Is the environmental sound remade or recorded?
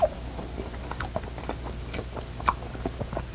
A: recorded